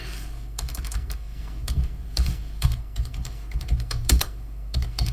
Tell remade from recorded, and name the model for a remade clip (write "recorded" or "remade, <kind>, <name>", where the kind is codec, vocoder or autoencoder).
remade, codec, SNAC